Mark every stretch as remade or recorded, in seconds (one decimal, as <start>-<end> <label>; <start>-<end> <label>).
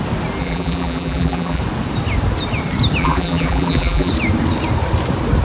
0.0-0.4 recorded; 0.4-1.6 remade; 1.6-3.0 recorded; 3.0-4.1 remade; 4.1-5.4 recorded